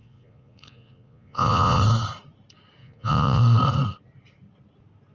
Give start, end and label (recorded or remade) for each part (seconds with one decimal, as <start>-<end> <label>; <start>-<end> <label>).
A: 0.0-1.8 remade; 1.8-2.8 recorded; 2.8-3.4 remade; 3.4-5.1 recorded